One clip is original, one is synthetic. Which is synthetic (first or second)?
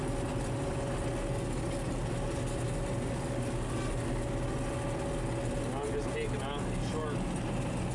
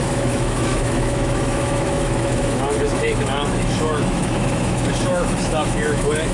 second